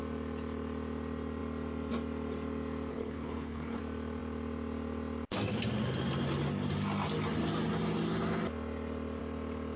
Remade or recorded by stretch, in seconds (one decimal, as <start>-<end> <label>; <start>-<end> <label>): 0.0-2.9 recorded; 2.9-3.8 remade; 3.8-9.8 recorded